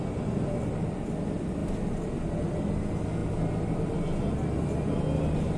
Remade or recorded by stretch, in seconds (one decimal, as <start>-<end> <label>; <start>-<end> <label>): 0.0-5.6 recorded